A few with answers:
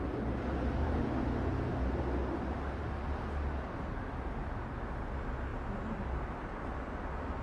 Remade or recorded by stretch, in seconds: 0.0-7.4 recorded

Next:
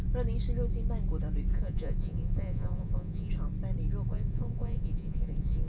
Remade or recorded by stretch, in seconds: 0.0-1.5 recorded; 1.5-3.3 remade; 3.3-4.1 recorded; 4.1-5.7 remade

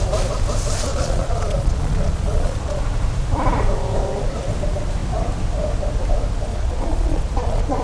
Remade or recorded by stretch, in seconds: 0.0-0.9 recorded; 0.9-2.8 remade; 2.8-6.5 recorded; 6.5-7.8 remade

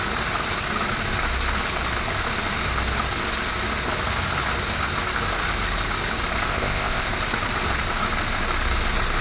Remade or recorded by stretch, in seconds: 0.0-6.5 recorded; 6.5-7.1 remade; 7.1-9.2 recorded

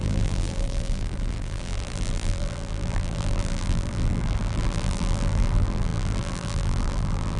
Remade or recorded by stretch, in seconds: 0.0-7.4 remade